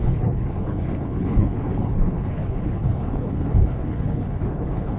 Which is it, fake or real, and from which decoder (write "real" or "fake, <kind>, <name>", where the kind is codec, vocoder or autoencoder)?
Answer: fake, codec, HILCodec